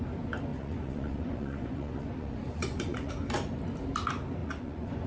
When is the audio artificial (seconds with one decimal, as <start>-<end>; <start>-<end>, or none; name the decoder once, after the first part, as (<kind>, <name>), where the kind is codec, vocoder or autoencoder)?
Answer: 0.5-3.1 (vocoder, Vocos); 4.4-5.1